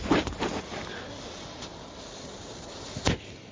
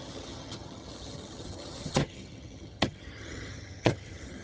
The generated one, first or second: second